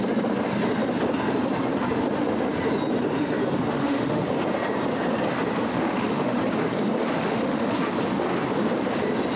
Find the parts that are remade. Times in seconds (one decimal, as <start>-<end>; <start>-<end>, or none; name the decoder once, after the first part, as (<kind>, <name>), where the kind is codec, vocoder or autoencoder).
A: 3.7-4.2 (autoencoder, DAC-VAE); 5.7-6.4; 7.2-7.7